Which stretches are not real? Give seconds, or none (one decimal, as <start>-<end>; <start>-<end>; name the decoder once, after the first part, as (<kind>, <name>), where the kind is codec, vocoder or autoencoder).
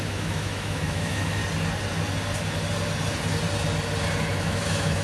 0.0-1.4 (autoencoder, DAC-VAE); 4.4-5.0